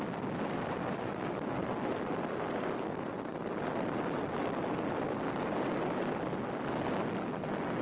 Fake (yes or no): no